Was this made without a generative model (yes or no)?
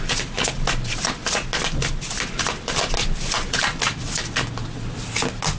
yes